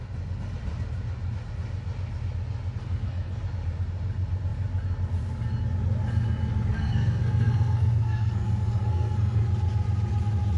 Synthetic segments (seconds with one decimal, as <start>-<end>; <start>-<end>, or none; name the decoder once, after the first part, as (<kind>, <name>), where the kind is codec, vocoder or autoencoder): 2.8-3.4 (codec, SNAC); 6.7-9.4